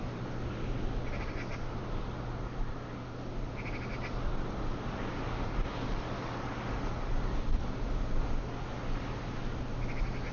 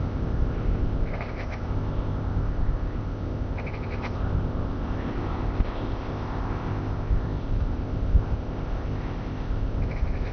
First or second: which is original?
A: first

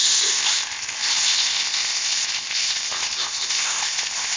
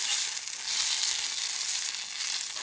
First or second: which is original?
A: second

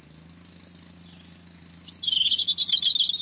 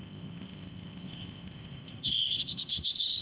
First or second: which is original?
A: first